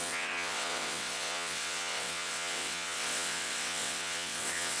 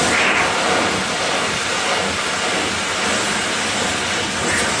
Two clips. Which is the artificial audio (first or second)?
first